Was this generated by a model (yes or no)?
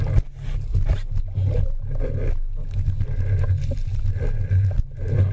no